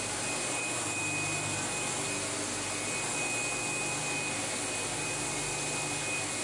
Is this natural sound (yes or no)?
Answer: yes